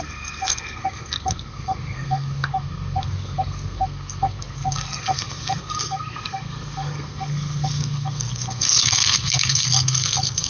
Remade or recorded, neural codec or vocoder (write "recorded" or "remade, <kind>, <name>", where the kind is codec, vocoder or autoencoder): remade, codec, SNAC